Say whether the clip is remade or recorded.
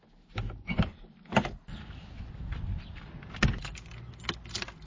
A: recorded